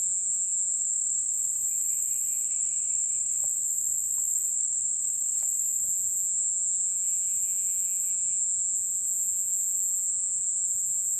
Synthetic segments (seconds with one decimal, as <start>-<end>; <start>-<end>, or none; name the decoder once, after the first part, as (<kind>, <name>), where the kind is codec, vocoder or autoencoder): 0.0-0.7 (vocoder, Vocos); 5.8-11.2